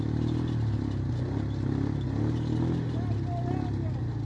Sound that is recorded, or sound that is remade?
recorded